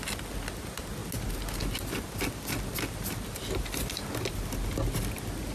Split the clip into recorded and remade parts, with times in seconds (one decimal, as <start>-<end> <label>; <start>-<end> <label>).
0.0-5.5 recorded